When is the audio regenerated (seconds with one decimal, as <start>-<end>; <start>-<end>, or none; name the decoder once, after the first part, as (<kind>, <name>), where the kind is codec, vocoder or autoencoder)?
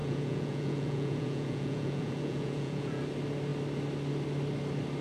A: 0.0-3.0 (vocoder, Vocos)